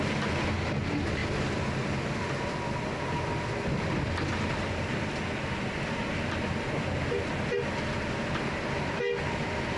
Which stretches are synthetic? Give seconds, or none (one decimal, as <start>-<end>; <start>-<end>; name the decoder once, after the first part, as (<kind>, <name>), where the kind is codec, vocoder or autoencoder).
none

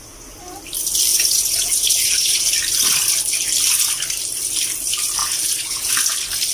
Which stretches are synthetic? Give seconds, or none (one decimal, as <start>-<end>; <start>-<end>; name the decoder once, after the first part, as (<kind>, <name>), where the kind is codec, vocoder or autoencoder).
1.1-2.4 (vocoder, Vocos); 5.2-5.9

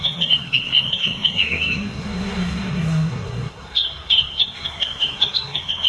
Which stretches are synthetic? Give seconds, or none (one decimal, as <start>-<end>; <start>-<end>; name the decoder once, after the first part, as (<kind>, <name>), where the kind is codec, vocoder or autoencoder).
0.0-5.9 (codec, SNAC)

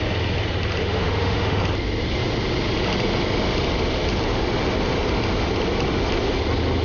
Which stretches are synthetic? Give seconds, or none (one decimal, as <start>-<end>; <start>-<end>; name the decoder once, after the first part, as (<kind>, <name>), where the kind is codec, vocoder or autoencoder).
0.8-1.6 (autoencoder, DAC-VAE)

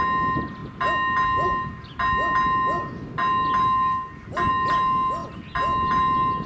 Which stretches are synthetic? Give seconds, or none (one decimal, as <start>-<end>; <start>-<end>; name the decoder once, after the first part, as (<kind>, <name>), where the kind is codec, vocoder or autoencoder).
none